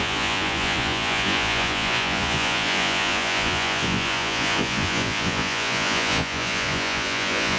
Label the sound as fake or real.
fake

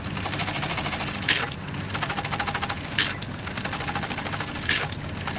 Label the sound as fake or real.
real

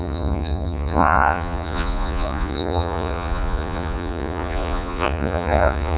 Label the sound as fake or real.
fake